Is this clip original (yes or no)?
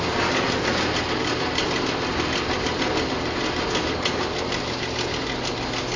yes